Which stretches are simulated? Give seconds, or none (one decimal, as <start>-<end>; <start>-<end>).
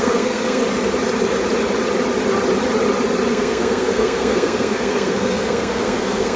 0.0-0.6; 3.3-6.4